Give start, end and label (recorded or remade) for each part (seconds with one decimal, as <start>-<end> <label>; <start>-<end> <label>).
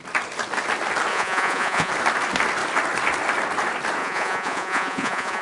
0.0-1.1 recorded; 1.1-1.9 remade; 1.9-4.0 recorded; 4.0-5.4 remade